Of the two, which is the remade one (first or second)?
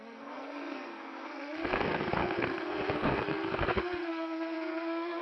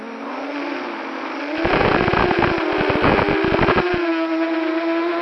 first